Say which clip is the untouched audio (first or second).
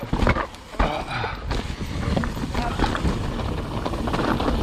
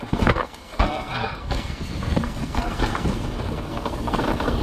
first